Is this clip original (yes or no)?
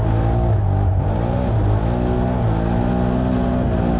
yes